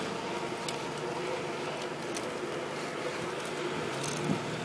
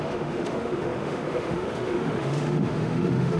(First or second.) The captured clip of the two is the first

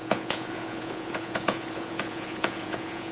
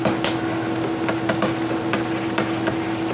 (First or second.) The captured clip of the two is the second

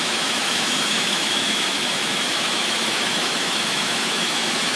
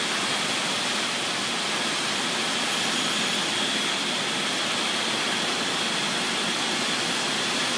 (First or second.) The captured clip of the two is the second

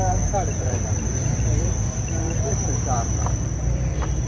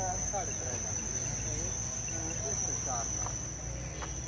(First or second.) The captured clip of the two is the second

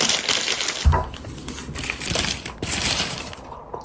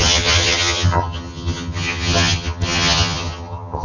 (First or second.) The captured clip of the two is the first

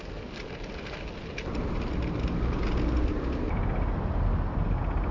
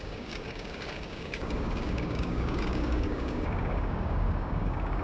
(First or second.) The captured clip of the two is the first